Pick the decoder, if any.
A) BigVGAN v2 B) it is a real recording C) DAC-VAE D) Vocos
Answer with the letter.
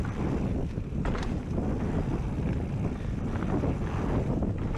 B